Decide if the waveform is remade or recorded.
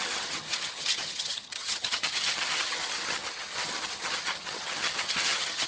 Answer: remade